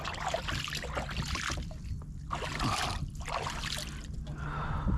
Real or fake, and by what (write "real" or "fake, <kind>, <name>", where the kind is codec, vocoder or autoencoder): real